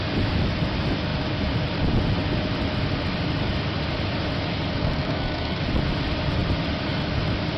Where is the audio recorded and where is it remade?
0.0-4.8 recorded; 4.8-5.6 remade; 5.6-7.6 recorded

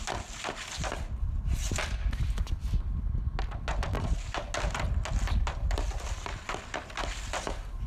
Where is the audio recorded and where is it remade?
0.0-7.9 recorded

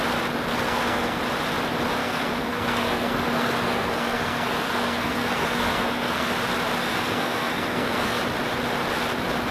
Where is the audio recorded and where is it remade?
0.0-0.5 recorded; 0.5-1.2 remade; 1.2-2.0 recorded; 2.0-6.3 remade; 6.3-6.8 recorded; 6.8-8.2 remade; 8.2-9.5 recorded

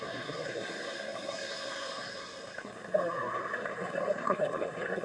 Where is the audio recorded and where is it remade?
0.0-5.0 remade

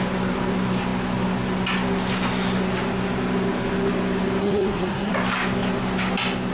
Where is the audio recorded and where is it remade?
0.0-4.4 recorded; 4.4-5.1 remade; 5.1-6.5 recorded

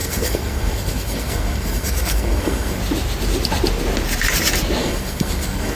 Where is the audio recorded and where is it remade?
0.0-2.8 remade; 2.8-4.8 recorded; 4.8-5.7 remade